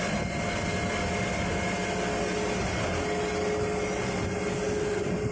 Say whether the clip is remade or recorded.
recorded